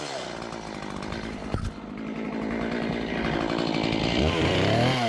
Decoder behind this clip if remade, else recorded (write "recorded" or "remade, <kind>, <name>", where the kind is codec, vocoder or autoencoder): recorded